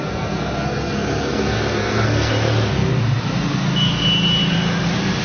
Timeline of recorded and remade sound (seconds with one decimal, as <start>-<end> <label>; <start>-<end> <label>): 0.0-2.3 remade; 2.3-5.2 recorded